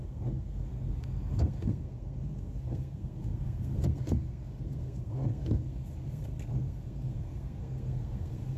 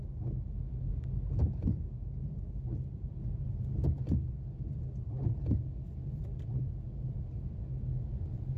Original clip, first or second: second